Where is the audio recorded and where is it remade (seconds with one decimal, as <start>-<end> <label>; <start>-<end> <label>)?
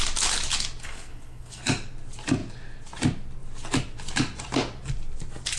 0.0-0.8 recorded; 0.8-1.6 remade; 1.6-5.6 recorded